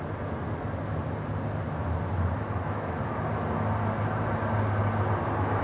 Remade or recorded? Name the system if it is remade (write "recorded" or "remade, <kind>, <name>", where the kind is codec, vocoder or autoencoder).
recorded